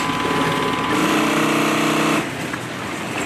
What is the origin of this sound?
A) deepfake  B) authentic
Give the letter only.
B